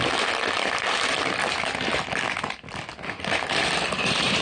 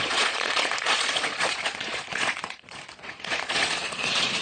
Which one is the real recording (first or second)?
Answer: first